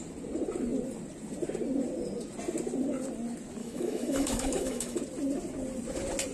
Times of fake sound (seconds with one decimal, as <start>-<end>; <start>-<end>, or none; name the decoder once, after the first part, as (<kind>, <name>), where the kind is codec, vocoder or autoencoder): 3.6-5.0 (autoencoder, DAC-VAE)